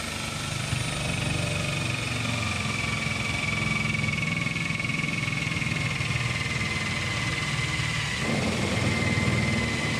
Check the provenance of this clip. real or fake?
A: real